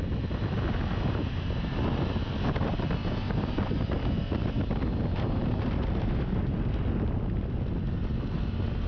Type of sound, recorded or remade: recorded